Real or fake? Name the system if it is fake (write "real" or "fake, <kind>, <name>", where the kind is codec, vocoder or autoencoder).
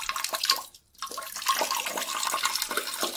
real